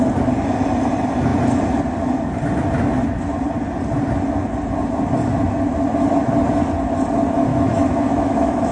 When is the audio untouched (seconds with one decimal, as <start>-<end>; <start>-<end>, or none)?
0.0-7.5